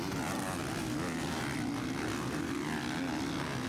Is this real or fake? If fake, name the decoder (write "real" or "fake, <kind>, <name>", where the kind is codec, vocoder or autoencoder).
real